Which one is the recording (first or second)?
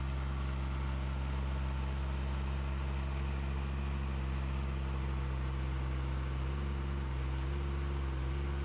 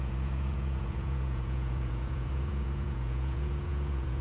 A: first